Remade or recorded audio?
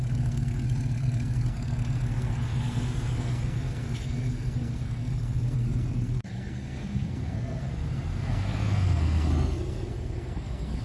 remade